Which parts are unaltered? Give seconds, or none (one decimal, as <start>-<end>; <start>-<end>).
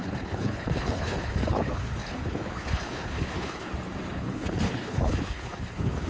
3.7-4.2